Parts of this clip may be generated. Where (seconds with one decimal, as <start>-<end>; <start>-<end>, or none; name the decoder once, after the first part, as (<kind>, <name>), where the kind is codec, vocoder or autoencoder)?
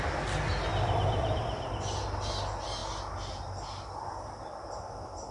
0.7-1.7 (vocoder, BigVGAN v2)